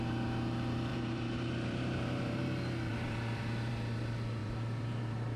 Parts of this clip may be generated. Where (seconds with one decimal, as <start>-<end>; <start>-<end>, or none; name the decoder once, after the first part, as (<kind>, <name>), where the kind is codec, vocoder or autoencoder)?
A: 0.9-2.4 (vocoder, BigVGAN v2); 2.9-3.7; 4.4-5.4